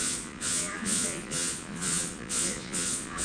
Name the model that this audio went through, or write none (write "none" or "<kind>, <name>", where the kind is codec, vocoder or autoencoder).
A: vocoder, Vocos